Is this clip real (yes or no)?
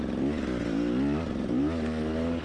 yes